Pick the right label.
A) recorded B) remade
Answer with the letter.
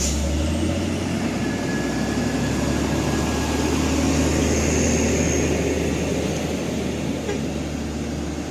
A